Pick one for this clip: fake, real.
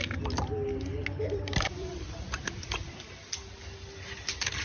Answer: real